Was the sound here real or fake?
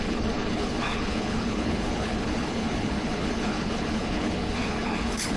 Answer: fake